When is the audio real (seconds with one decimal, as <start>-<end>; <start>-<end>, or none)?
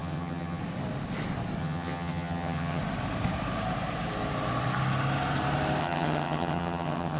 0.6-1.6; 2.8-5.8